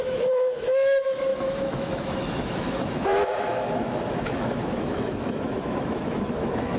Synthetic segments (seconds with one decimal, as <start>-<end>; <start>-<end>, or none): 0.0-6.8